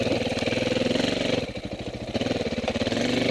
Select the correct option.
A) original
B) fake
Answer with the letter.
A